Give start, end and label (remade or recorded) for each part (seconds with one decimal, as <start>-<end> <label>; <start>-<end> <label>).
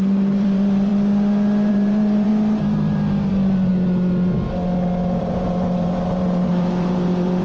0.0-0.9 remade; 0.9-1.7 recorded; 1.7-2.3 remade; 2.3-3.3 recorded; 3.3-3.7 remade; 3.7-5.2 recorded; 5.2-7.4 remade